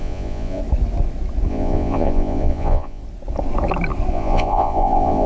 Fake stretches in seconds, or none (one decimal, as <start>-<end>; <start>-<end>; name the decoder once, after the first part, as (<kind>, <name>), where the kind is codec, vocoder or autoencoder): 0.0-0.6 (vocoder, Vocos); 1.5-3.0; 4.1-5.3